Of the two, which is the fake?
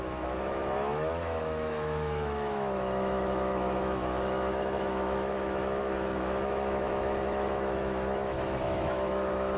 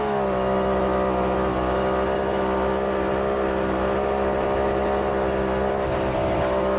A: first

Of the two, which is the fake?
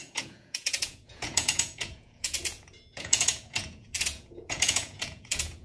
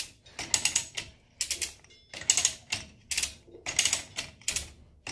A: first